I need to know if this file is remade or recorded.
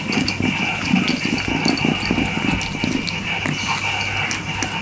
recorded